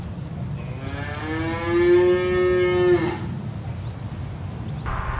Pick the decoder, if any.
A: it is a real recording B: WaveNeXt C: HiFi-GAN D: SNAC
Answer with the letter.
A